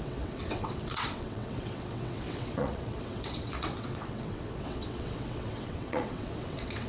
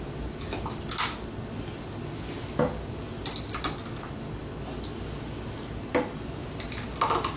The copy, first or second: first